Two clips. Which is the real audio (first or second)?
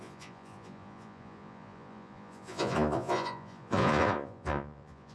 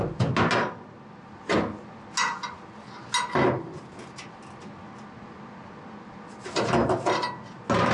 second